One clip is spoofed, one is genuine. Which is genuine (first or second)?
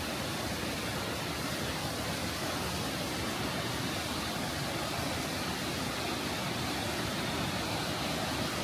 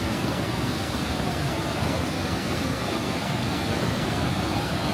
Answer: first